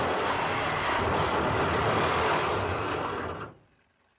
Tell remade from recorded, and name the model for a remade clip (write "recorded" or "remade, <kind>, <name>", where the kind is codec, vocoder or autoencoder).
recorded